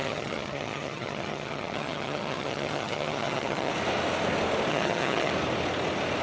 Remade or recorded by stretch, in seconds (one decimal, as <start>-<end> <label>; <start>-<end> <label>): 0.0-3.7 remade; 3.7-4.7 recorded; 4.7-5.3 remade; 5.3-6.2 recorded